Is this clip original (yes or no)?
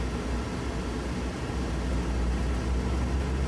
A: yes